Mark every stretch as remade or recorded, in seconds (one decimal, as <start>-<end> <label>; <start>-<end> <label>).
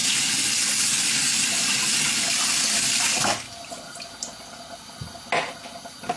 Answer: 0.0-6.2 recorded